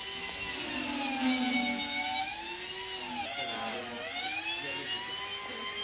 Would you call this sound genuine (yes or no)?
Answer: yes